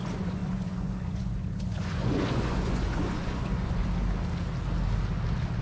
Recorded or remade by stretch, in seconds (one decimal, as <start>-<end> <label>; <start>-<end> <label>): 0.0-3.8 remade; 3.8-5.6 recorded